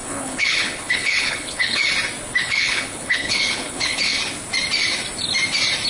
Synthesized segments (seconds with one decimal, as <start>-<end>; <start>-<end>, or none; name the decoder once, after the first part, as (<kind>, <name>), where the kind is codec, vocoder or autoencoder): 0.0-1.8 (codec, HILCodec); 2.4-4.2